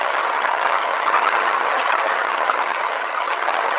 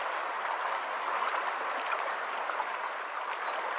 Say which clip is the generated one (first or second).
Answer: first